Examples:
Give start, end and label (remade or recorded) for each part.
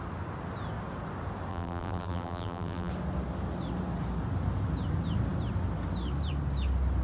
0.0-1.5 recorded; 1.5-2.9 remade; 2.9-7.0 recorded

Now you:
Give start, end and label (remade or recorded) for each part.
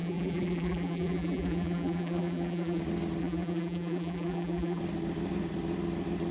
0.0-2.8 remade; 2.8-3.2 recorded; 3.2-4.8 remade; 4.8-6.3 recorded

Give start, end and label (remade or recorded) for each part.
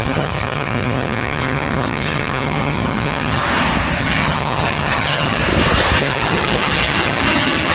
0.0-3.4 remade; 3.4-4.0 recorded; 4.0-5.4 remade; 5.4-6.0 recorded; 6.0-7.7 remade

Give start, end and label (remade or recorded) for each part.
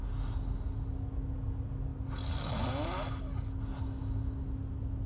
0.0-5.1 recorded